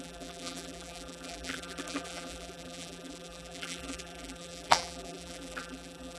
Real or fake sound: fake